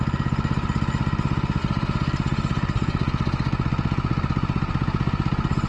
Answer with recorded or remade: recorded